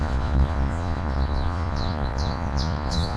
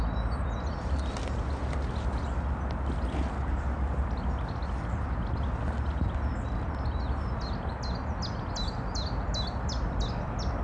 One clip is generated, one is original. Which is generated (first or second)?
first